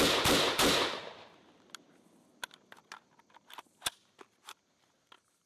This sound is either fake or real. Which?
real